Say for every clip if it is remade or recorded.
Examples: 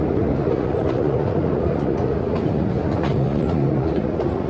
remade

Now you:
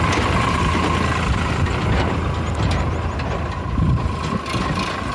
recorded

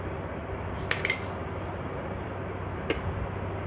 recorded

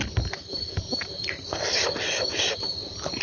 recorded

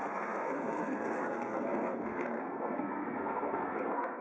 remade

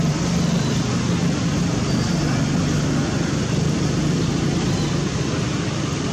recorded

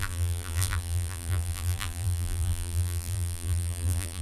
remade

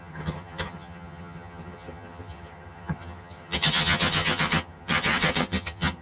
remade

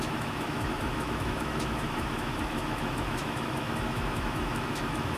remade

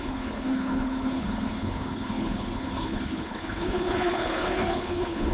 remade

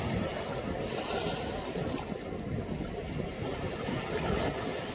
recorded